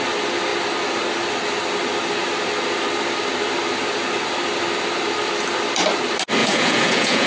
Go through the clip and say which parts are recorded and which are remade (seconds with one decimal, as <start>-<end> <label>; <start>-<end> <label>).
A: 0.0-6.4 recorded; 6.4-7.3 remade